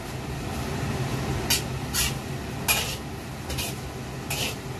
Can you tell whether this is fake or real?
real